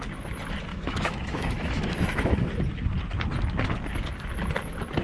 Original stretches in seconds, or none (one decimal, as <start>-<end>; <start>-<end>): 0.0-0.7; 2.5-5.0